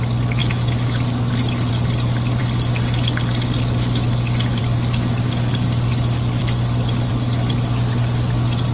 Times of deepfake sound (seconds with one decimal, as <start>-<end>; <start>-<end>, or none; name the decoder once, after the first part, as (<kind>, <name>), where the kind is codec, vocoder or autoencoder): none